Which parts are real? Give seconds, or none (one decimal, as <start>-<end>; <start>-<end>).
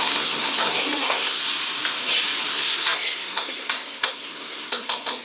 1.4-2.5